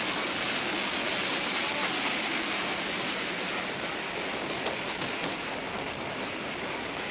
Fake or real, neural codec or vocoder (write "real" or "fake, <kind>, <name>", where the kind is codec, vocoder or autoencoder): real